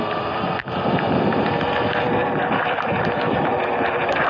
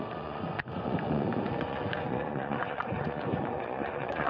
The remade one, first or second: second